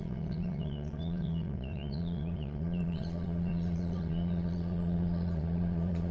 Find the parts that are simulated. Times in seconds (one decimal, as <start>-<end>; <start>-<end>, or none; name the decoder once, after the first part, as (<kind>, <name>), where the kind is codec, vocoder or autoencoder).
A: 0.0-6.1 (vocoder, Vocos)

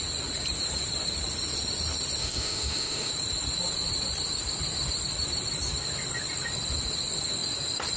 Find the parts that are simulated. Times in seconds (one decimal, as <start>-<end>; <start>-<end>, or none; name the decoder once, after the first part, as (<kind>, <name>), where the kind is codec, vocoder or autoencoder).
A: 2.2-3.1 (autoencoder, DAC-VAE)